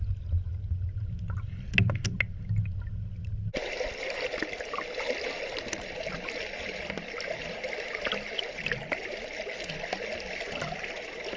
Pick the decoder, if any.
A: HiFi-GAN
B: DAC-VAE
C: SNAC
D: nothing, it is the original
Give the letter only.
D